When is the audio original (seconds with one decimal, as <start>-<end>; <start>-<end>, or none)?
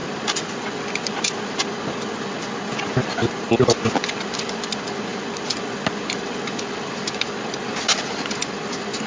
0.0-9.1